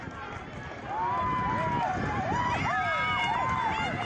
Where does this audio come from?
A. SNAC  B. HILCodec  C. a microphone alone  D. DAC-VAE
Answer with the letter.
C